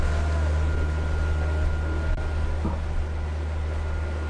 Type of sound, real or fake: real